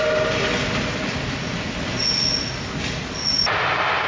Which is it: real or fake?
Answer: real